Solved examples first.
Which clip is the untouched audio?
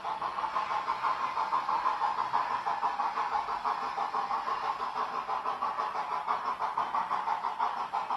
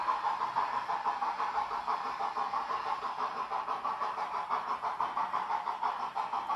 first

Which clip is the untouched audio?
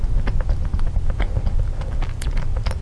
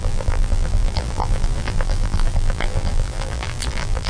first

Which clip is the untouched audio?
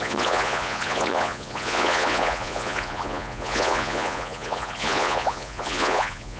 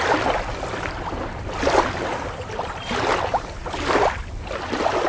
second